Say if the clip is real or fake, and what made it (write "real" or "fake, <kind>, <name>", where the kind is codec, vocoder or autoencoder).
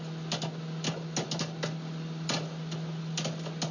real